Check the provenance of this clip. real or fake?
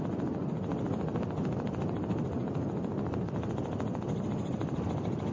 real